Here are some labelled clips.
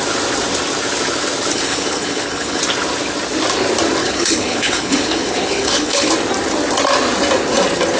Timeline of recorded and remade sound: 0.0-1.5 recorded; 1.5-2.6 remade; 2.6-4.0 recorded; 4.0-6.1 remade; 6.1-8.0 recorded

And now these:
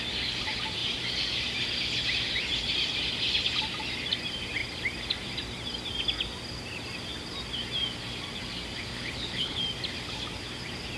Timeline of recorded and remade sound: 0.0-8.9 recorded; 8.9-9.6 remade; 9.6-11.0 recorded

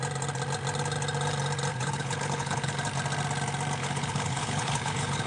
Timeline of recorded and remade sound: 0.0-1.7 recorded; 1.7-2.7 remade; 2.7-3.8 recorded; 3.8-5.3 remade

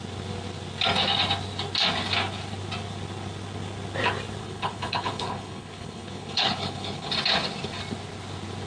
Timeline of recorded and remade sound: 0.0-4.4 recorded; 4.4-7.1 remade; 7.1-8.7 recorded

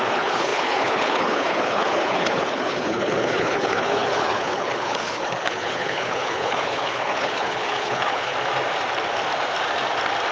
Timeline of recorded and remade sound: 0.0-8.3 remade; 8.3-10.3 recorded